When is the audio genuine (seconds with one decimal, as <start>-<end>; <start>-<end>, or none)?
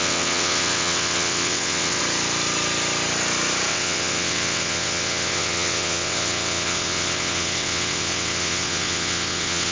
2.0-3.7